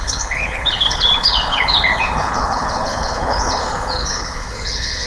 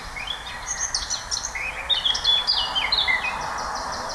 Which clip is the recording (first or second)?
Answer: second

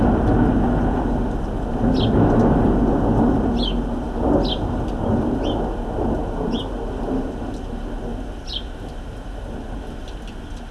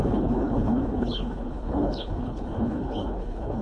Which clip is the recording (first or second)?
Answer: first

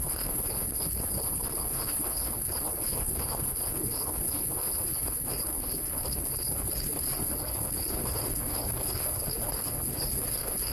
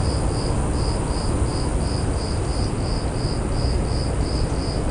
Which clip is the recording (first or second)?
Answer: second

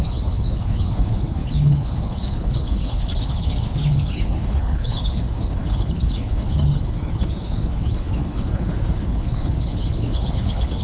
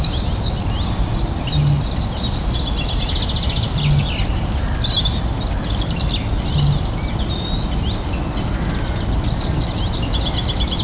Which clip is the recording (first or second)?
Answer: second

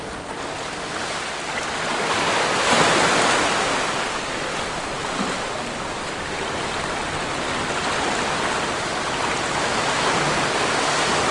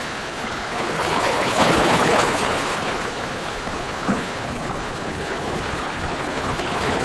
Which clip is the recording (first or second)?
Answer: first